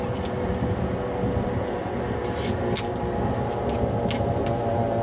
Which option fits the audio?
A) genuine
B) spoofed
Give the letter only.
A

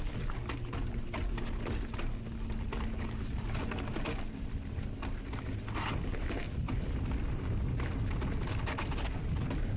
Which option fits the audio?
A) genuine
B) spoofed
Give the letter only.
A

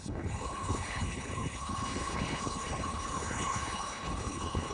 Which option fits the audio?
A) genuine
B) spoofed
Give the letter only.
B